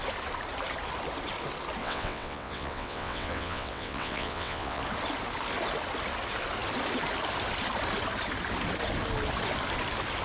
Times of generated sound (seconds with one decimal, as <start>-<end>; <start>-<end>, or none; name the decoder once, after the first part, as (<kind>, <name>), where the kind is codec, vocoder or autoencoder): 1.8-4.8 (vocoder, WaveNeXt)